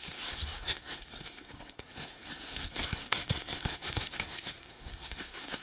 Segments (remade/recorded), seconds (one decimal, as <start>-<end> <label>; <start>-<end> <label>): 0.0-5.6 remade